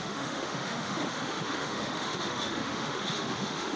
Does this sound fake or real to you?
fake